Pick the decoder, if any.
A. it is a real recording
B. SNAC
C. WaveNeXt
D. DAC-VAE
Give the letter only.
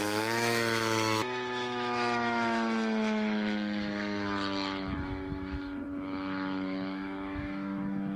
D